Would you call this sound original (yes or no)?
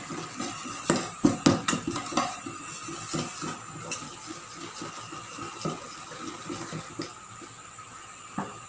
yes